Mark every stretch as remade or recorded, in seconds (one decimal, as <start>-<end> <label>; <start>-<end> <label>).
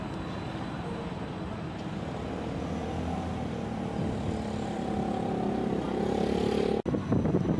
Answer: 0.0-2.8 recorded; 2.8-3.3 remade; 3.3-7.6 recorded